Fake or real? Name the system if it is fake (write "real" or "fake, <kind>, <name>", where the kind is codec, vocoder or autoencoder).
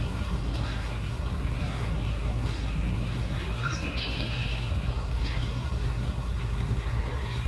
fake, codec, SNAC